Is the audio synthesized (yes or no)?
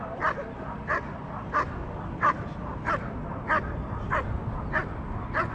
no